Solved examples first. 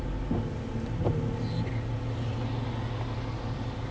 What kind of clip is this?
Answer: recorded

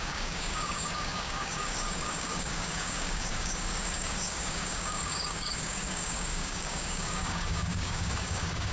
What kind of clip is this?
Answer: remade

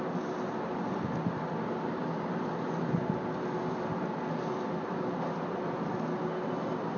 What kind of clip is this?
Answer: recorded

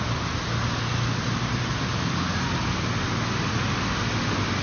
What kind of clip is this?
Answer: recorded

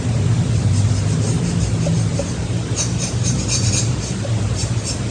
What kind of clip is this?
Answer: recorded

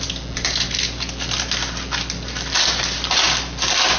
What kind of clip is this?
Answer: recorded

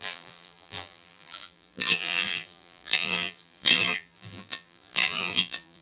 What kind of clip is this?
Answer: remade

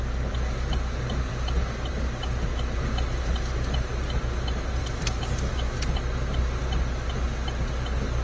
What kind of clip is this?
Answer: recorded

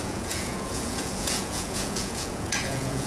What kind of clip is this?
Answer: remade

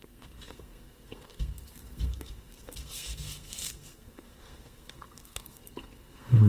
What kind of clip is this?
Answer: remade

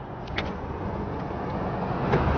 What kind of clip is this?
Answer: remade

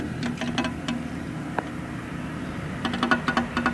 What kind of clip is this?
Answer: recorded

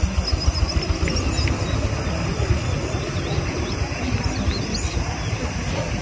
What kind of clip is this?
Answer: recorded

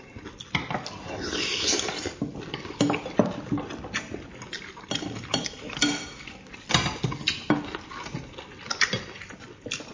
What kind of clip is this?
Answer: recorded